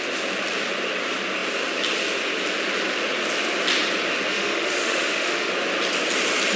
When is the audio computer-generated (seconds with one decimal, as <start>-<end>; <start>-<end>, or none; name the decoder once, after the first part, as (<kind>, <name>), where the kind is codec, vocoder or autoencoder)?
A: 4.3-5.5 (autoencoder, DAC-VAE)